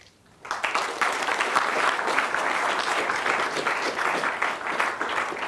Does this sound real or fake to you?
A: real